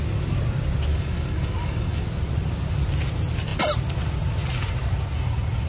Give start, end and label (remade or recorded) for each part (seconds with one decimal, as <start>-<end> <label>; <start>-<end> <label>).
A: 0.0-0.9 recorded; 0.9-2.0 remade; 2.0-5.7 recorded